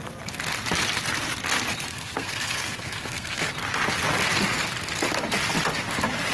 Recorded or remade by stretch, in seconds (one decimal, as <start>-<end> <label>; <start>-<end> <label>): 0.0-1.9 recorded; 1.9-3.4 remade; 3.4-6.3 recorded